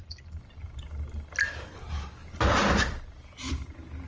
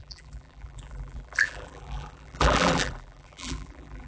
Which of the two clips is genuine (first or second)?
first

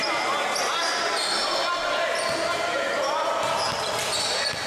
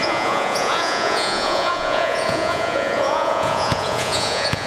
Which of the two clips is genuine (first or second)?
first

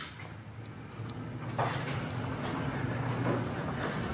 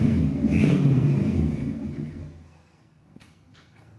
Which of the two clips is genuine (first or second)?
first